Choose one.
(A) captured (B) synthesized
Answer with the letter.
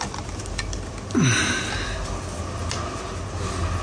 A